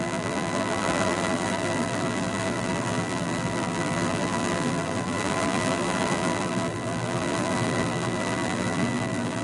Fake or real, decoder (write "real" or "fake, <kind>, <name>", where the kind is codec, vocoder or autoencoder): fake, vocoder, BigVGAN v2